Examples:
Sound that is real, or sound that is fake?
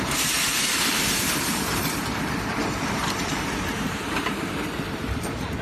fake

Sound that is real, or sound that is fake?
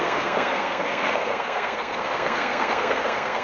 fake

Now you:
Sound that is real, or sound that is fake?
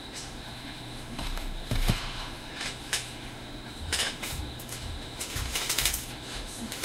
fake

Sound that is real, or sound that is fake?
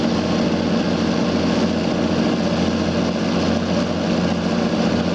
real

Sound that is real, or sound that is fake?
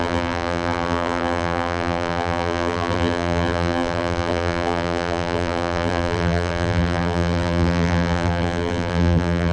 fake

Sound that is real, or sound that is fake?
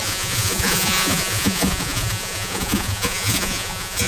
fake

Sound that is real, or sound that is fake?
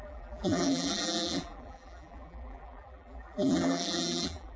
fake